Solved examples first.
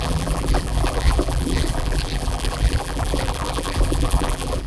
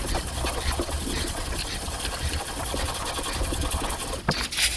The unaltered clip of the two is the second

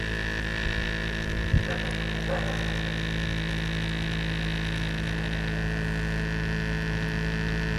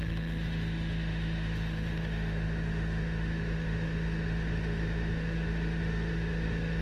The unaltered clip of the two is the first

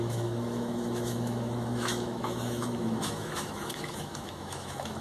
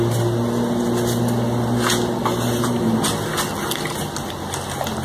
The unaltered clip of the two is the second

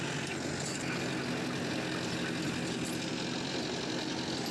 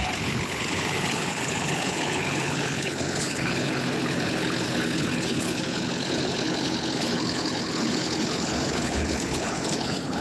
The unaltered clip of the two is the first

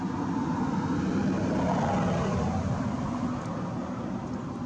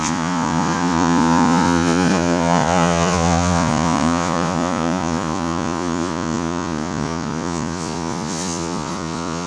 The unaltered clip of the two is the first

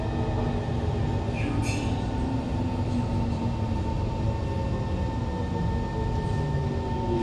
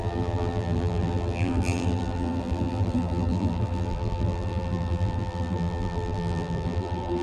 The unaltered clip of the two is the first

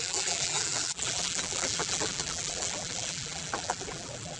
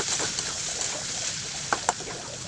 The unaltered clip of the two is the second